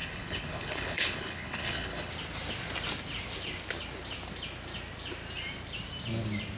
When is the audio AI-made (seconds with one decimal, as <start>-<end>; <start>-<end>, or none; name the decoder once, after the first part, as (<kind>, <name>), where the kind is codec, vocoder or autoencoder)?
0.0-2.1 (codec, HILCodec)